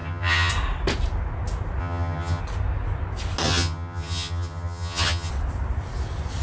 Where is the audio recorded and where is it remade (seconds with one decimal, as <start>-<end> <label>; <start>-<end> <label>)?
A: 0.0-0.5 remade; 0.5-1.8 recorded; 1.8-2.4 remade; 2.4-3.4 recorded; 3.4-5.3 remade; 5.3-6.4 recorded